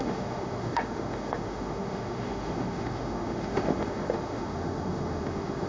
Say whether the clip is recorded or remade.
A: remade